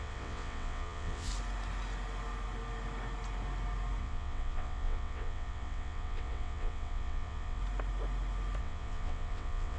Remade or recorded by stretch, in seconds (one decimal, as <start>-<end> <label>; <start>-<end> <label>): 0.0-1.3 remade; 1.3-4.0 recorded; 4.0-7.6 remade; 7.6-8.6 recorded; 8.6-9.8 remade

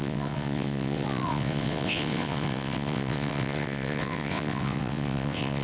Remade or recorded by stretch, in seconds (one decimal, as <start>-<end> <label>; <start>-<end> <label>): 0.0-5.6 remade